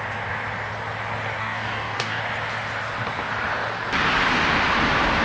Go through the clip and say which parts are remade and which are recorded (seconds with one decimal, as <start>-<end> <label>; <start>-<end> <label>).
0.0-1.4 recorded; 1.4-2.2 remade; 2.2-5.2 recorded